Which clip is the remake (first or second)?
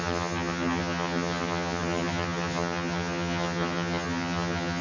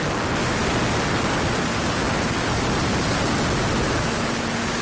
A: first